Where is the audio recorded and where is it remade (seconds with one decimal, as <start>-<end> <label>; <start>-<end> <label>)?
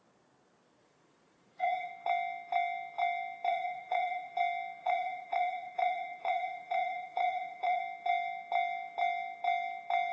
0.0-0.8 recorded; 0.8-1.9 remade; 1.9-3.5 recorded; 3.5-4.3 remade; 4.3-4.8 recorded; 4.8-7.8 remade; 7.8-10.1 recorded